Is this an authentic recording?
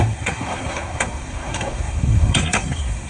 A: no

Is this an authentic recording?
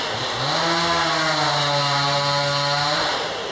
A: yes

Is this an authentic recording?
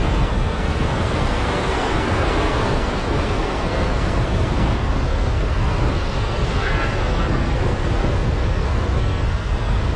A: no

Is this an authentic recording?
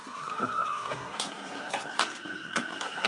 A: no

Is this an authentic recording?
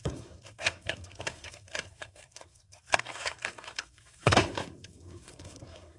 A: no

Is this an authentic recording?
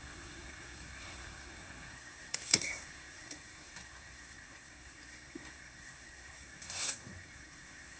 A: no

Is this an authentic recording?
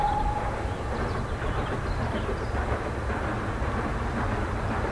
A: yes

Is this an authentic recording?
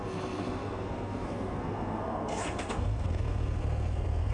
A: no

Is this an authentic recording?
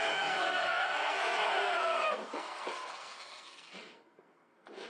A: no